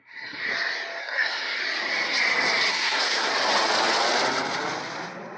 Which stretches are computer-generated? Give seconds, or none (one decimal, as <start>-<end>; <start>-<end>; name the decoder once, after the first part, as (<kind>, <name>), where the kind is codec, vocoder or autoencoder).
0.0-0.4 (codec, SNAC); 1.0-1.6; 2.7-3.3